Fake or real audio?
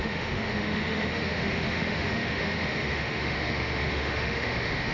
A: fake